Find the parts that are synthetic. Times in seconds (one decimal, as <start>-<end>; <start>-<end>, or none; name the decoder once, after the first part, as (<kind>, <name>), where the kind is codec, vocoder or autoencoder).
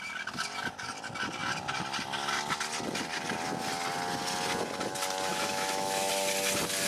5.3-6.1 (autoencoder, DAC-VAE)